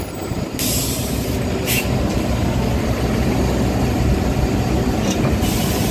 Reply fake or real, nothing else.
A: real